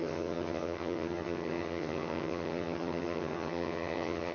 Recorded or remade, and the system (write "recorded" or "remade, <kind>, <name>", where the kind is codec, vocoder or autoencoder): remade, vocoder, HiFi-GAN